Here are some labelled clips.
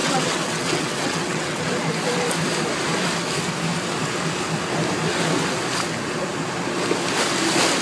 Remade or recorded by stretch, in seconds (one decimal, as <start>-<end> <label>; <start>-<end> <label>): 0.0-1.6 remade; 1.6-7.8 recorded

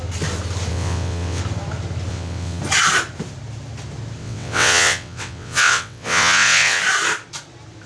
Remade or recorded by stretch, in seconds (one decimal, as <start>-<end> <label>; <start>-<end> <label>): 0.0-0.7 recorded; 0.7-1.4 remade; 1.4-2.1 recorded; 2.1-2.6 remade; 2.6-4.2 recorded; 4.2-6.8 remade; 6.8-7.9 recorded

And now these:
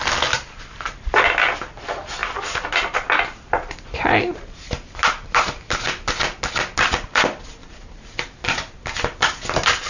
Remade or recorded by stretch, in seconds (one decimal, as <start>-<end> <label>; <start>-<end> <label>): 0.0-9.9 recorded

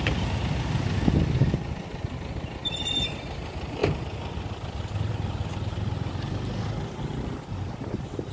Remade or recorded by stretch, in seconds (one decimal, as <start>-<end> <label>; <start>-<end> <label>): 0.0-8.3 recorded

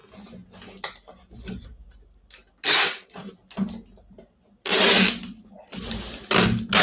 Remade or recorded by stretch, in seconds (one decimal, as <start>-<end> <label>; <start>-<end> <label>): 0.0-6.8 recorded